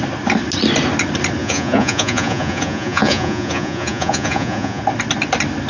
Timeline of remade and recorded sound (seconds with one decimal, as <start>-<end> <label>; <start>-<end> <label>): 0.0-1.4 recorded; 1.4-4.8 remade; 4.8-5.7 recorded